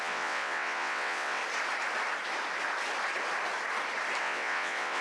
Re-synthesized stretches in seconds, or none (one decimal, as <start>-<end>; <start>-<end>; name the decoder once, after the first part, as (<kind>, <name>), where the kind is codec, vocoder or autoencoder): 0.0-1.4 (vocoder, WaveNeXt); 4.2-5.0